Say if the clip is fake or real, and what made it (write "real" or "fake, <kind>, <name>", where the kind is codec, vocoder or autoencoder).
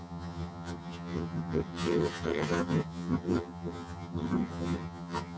fake, vocoder, HiFi-GAN